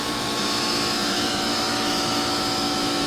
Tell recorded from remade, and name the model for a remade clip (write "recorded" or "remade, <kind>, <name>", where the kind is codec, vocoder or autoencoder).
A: remade, autoencoder, DAC-VAE